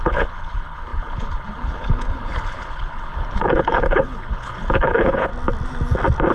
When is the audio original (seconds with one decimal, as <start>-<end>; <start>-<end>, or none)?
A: 5.3-6.3